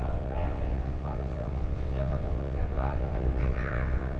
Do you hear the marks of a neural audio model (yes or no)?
yes